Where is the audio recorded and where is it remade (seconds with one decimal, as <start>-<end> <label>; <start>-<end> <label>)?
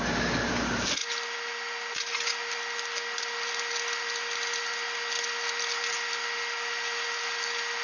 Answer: 0.0-7.8 recorded